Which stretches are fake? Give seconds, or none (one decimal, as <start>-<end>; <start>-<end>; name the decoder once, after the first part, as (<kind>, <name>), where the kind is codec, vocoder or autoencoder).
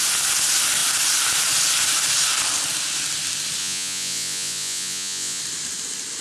3.6-5.4 (vocoder, Vocos)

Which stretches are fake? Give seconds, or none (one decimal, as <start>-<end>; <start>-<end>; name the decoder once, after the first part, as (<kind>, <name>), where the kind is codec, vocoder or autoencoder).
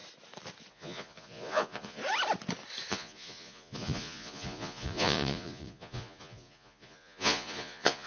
0.7-2.0 (vocoder, Vocos); 2.9-8.1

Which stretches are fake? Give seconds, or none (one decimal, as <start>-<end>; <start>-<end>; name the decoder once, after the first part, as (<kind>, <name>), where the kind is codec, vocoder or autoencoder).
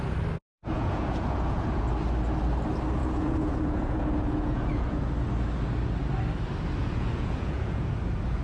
0.5-1.9 (vocoder, Vocos); 3.0-5.1; 6.8-7.9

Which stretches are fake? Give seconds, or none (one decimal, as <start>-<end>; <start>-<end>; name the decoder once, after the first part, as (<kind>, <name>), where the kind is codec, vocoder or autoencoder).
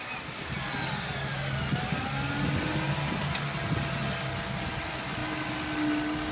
none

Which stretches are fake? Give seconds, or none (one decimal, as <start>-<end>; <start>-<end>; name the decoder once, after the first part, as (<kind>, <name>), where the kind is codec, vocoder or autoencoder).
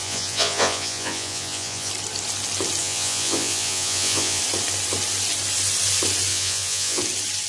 0.0-1.9 (vocoder, Vocos); 2.8-4.4; 6.3-7.0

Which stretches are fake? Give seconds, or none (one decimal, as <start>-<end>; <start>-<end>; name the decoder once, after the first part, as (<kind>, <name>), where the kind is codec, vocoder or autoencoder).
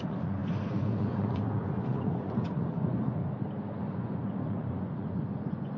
0.0-3.2 (vocoder, Vocos); 3.8-5.8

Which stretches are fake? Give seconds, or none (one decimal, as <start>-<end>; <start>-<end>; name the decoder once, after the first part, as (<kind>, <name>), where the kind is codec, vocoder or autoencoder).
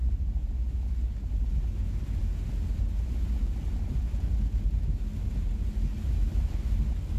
none